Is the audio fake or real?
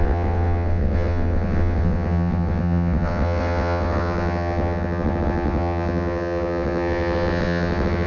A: fake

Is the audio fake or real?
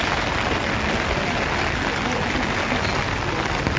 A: real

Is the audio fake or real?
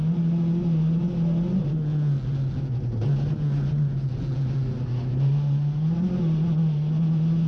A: real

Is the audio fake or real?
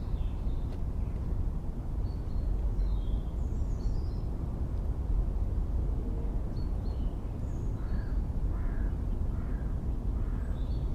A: real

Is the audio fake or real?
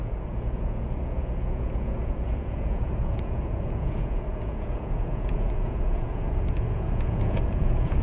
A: fake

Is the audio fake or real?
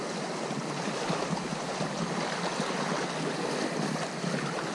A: real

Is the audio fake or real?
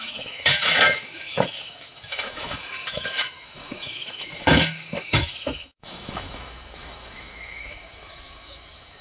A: fake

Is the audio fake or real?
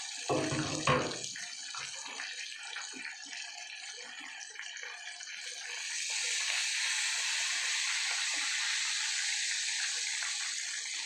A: real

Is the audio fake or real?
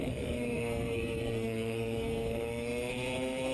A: fake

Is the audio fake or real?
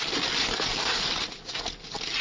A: real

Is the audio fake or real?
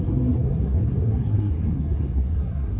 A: fake